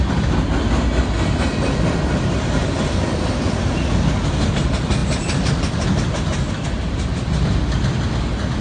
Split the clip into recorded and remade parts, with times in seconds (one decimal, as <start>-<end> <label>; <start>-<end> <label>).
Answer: 0.0-8.6 recorded